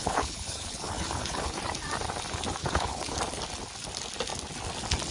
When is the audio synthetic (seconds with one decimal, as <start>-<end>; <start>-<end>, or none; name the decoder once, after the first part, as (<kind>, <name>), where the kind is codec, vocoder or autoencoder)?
0.0-1.6 (codec, HILCodec); 2.6-3.2